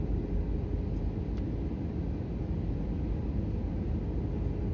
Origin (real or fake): real